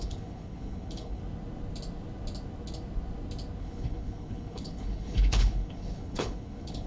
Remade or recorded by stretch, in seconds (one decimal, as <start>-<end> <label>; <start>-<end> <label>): 0.0-1.2 remade; 1.2-3.6 recorded; 3.6-6.9 remade